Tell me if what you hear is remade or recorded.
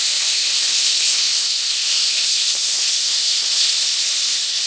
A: remade